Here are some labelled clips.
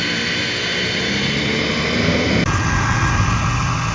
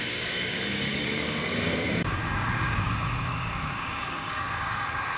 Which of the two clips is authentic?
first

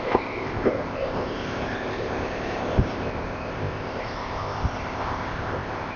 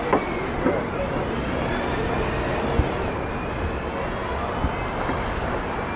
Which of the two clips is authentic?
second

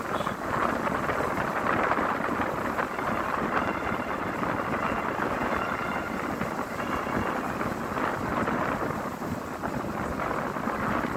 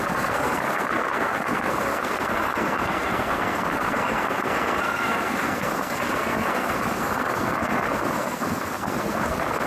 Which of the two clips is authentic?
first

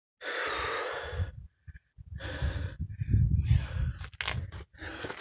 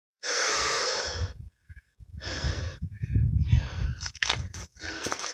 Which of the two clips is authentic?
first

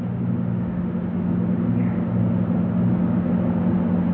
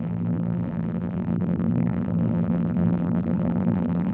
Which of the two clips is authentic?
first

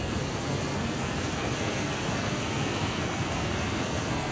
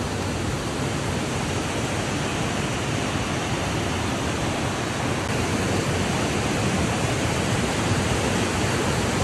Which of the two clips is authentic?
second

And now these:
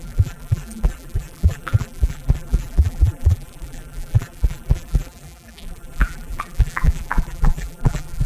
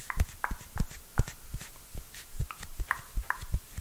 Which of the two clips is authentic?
second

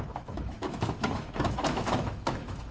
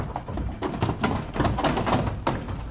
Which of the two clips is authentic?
second